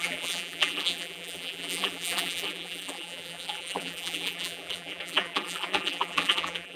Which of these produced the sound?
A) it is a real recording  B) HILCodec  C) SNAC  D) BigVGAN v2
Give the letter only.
D